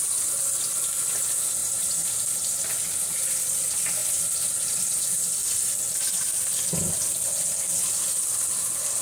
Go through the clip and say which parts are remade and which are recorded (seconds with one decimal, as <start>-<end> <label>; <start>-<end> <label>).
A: 0.0-1.6 recorded; 1.6-2.7 remade; 2.7-9.0 recorded